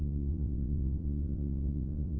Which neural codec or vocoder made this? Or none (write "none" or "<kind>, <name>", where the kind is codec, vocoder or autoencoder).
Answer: vocoder, WaveNeXt